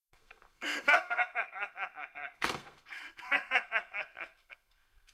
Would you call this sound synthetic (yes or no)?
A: yes